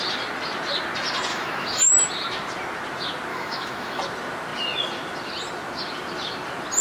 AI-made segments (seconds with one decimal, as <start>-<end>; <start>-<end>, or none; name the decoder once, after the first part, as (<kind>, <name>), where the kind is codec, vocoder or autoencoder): 1.3-1.9 (autoencoder, DAC-VAE); 3.3-4.0